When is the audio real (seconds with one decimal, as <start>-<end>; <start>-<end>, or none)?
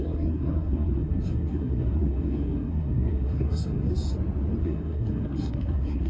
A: 3.9-4.6